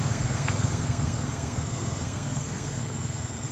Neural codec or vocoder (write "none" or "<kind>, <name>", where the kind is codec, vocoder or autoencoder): codec, SNAC